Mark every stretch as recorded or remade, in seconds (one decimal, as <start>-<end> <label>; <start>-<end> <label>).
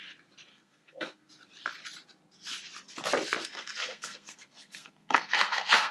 0.0-0.5 recorded; 0.5-1.3 remade; 1.3-3.4 recorded; 3.4-5.9 remade